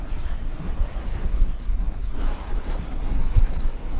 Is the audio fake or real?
fake